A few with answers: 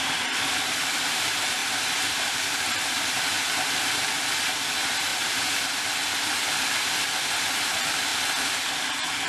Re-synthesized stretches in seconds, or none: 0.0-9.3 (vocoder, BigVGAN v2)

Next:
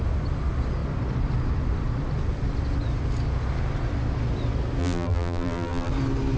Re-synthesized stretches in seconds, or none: 4.8-5.9 (vocoder, BigVGAN v2)

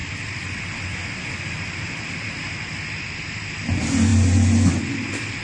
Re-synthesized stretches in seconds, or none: none

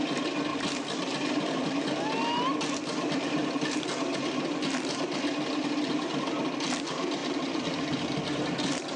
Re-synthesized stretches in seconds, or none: 0.5-1.8 (vocoder, BigVGAN v2); 3.4-4.2; 7.2-8.2

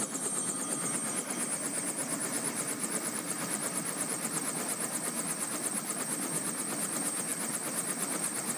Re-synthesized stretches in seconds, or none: 2.0-6.0 (vocoder, BigVGAN v2); 7.3-8.6

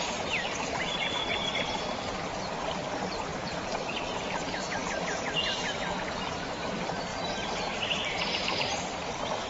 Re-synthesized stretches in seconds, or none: 0.0-1.2 (vocoder, BigVGAN v2); 2.6-4.8; 6.6-9.5

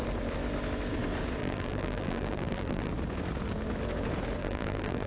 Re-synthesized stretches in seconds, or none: 1.4-2.9 (vocoder, BigVGAN v2); 4.4-5.1

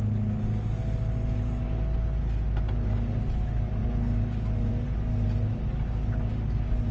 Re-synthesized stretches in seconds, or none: none